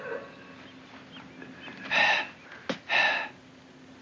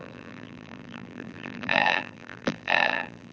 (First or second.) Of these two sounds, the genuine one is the first